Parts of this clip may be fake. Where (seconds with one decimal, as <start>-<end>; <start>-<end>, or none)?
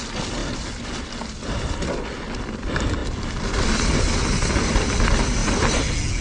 none